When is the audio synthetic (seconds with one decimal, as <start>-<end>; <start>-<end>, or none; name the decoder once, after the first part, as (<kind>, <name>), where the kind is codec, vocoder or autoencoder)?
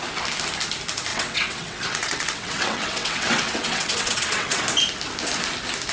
1.1-4.6 (vocoder, WaveNeXt)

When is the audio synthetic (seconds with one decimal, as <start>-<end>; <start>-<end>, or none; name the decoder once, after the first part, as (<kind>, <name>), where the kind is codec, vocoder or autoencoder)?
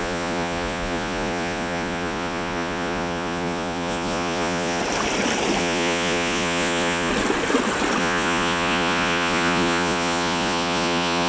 0.0-4.8 (vocoder, Vocos); 5.6-7.1; 8.0-11.3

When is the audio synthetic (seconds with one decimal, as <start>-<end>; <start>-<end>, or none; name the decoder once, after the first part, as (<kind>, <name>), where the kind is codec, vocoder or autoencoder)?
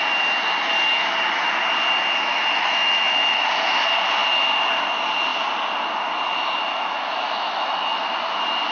2.3-3.4 (autoencoder, DAC-VAE); 6.7-8.0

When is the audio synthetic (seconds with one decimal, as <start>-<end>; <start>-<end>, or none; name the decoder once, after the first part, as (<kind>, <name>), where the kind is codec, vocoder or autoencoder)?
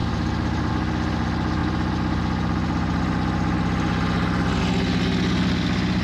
0.0-0.7 (vocoder, BigVGAN v2)